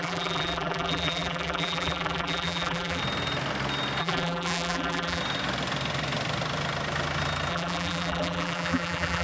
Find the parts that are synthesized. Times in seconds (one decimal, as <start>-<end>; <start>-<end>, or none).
0.0-3.0; 4.0-5.2; 7.5-9.2